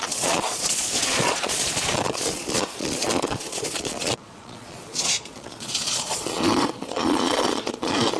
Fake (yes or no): yes